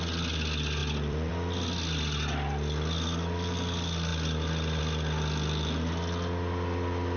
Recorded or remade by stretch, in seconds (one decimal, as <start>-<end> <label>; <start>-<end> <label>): 0.0-0.8 recorded; 0.8-1.3 remade; 1.3-7.2 recorded